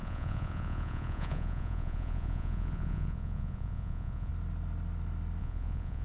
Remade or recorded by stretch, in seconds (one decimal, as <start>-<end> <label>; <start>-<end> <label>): 0.0-4.3 remade; 4.3-5.4 recorded; 5.4-6.0 remade